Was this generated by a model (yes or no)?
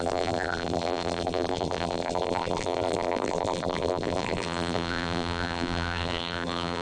yes